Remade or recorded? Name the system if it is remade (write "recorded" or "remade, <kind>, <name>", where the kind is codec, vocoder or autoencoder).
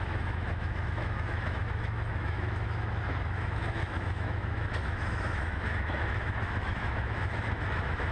remade, autoencoder, DAC-VAE